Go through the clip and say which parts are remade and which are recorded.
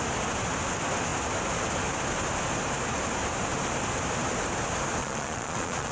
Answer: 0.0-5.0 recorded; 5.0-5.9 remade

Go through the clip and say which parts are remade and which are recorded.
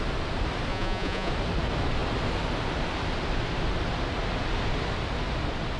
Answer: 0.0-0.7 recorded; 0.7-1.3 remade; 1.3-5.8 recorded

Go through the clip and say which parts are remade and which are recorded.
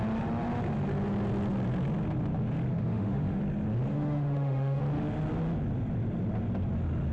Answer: 0.0-2.7 recorded; 2.7-3.4 remade; 3.4-3.9 recorded; 3.9-4.8 remade; 4.8-7.1 recorded